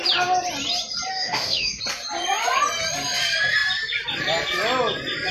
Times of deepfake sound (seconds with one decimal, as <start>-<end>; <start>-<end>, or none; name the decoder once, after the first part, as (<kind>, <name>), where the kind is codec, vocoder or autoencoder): 1.1-1.8 (autoencoder, DAC-VAE)